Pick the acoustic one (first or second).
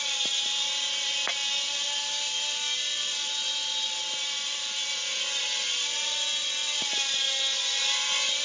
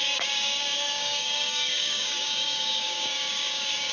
first